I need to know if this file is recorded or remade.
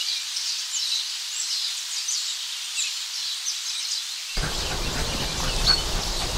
recorded